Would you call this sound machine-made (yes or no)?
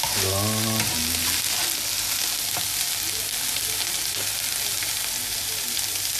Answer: no